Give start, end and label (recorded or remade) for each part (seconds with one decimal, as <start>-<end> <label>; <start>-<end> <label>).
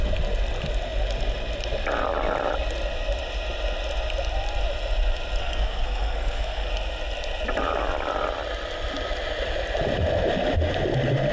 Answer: 0.0-5.4 recorded; 5.4-6.7 remade; 6.7-11.3 recorded